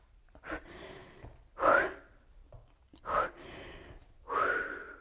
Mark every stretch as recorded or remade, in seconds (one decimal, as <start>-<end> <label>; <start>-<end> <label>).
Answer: 0.0-5.0 recorded